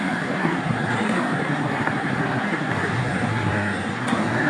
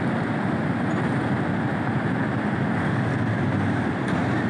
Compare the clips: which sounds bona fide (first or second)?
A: second